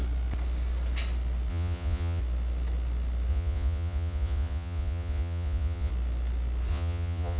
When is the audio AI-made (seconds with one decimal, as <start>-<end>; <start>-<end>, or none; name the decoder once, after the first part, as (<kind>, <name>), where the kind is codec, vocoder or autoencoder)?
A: 1.5-2.2 (vocoder, Vocos); 3.3-5.9; 6.7-7.4